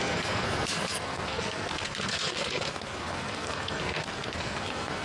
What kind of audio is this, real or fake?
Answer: fake